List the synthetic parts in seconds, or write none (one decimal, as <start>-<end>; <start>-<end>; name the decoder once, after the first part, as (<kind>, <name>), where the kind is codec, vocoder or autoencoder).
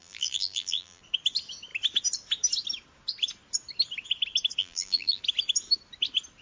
0.0-1.0 (vocoder, BigVGAN v2); 4.6-5.2